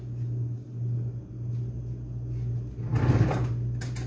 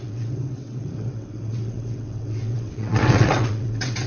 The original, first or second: first